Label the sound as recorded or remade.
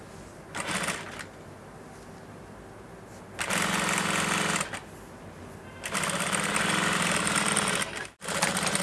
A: recorded